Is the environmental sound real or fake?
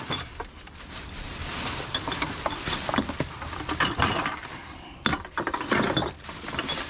fake